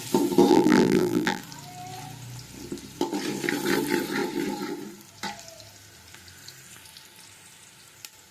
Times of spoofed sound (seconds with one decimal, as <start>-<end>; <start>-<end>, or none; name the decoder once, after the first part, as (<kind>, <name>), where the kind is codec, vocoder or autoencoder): 0.5-1.4 (vocoder, BigVGAN v2)